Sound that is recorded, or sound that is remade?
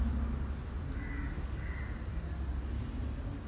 recorded